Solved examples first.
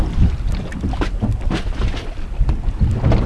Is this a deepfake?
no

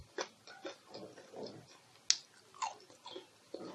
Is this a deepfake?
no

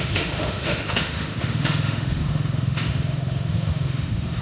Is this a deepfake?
yes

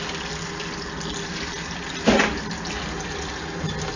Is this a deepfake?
no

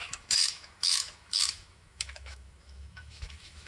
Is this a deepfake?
yes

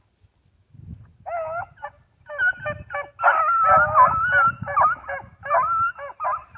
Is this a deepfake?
no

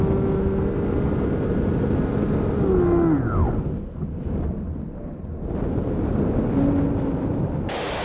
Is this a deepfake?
no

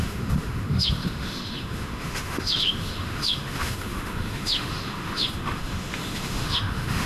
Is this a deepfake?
yes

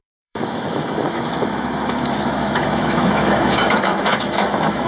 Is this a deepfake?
yes